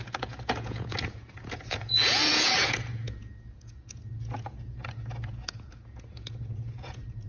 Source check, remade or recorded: remade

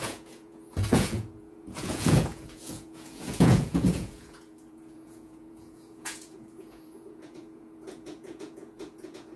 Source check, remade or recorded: remade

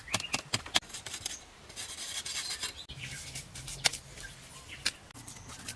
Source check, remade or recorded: recorded